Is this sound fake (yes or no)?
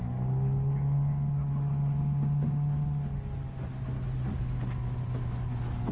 no